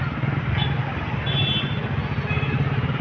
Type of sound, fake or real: real